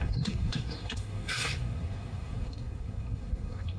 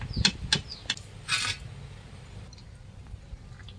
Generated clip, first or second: first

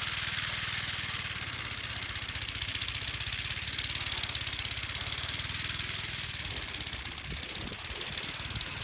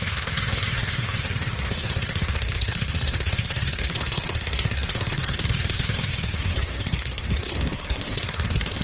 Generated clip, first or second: second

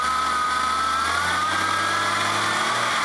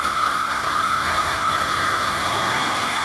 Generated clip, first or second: second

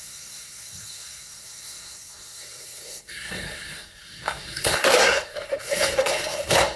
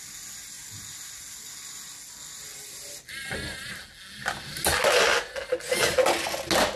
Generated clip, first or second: first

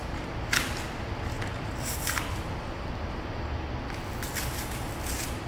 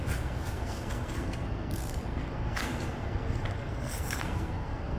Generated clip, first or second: second